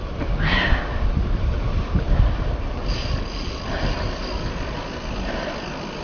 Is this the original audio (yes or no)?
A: yes